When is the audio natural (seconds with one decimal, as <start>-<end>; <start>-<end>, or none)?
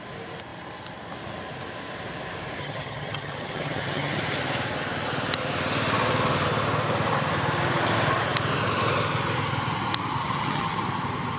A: 0.0-2.6; 4.2-10.2; 10.8-11.4